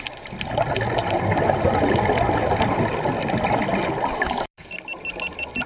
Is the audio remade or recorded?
recorded